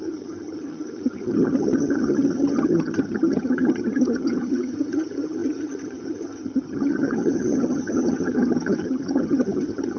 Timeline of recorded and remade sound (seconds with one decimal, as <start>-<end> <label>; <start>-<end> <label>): 0.0-10.0 remade

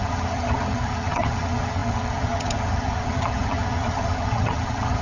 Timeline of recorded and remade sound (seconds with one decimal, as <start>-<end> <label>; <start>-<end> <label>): 0.0-5.0 remade

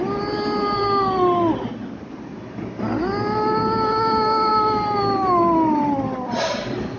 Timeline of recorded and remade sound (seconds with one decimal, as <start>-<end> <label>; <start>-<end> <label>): 0.0-7.0 recorded

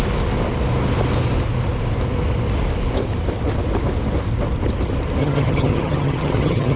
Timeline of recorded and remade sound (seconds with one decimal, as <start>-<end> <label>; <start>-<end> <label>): 0.0-5.2 recorded; 5.2-6.8 remade